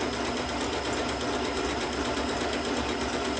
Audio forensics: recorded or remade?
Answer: recorded